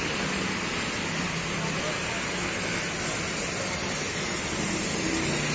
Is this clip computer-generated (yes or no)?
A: no